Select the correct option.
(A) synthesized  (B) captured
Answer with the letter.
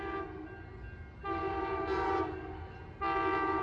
B